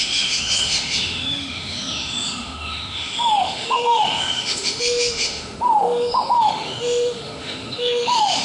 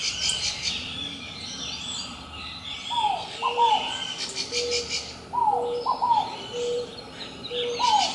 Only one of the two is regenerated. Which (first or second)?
first